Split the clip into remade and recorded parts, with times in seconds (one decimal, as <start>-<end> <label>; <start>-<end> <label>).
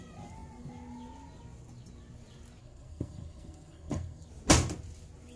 0.0-2.6 recorded; 2.6-4.3 remade; 4.3-5.4 recorded